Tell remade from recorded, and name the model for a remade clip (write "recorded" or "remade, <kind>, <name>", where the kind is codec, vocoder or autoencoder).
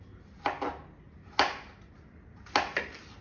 recorded